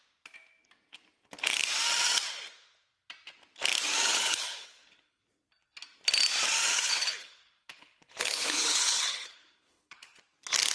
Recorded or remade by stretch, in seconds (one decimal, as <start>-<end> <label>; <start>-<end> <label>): 0.0-4.1 recorded; 4.1-5.2 remade; 5.2-6.7 recorded; 6.7-10.2 remade; 10.2-10.7 recorded